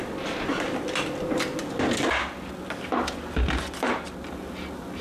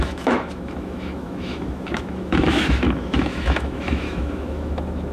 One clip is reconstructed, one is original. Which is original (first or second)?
first